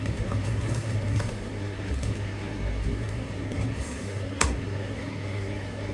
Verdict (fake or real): fake